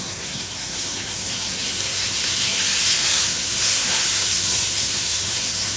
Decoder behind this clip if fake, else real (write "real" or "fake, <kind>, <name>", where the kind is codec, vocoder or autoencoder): fake, codec, SNAC